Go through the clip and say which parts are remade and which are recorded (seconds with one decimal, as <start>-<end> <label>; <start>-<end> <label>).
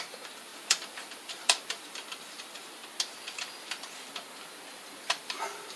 0.0-2.8 remade; 2.8-5.2 recorded; 5.2-5.8 remade